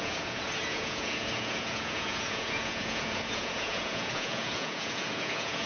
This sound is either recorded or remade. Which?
remade